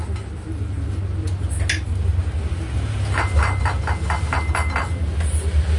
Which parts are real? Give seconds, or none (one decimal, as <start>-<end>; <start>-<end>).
0.0-0.5; 1.0-5.8